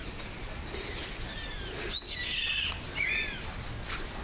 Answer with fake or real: real